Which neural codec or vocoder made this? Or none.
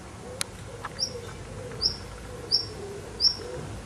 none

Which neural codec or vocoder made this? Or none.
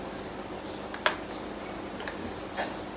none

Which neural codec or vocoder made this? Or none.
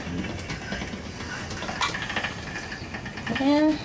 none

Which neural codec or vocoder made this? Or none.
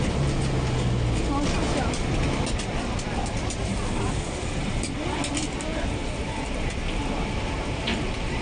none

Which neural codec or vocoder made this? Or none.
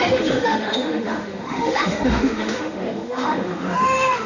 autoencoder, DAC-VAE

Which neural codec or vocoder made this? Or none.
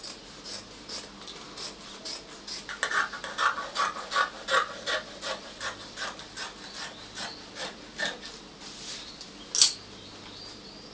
none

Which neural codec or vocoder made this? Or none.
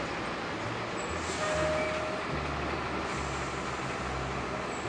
none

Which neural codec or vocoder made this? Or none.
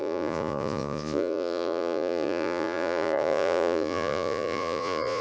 vocoder, Vocos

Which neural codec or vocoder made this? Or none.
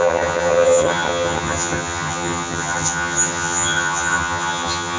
vocoder, HiFi-GAN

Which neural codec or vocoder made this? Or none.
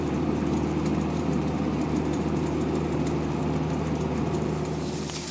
vocoder, BigVGAN v2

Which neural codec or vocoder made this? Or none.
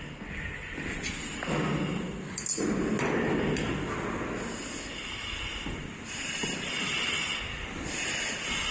none